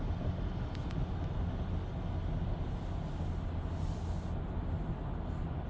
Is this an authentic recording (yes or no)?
yes